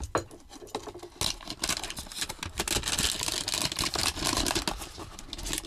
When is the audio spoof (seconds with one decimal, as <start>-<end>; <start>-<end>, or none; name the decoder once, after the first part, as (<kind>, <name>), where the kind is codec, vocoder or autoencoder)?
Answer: none

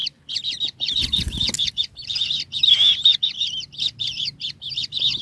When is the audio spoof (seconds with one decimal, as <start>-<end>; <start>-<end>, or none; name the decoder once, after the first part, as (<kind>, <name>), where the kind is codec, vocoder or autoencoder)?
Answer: none